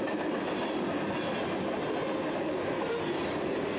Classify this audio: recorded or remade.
recorded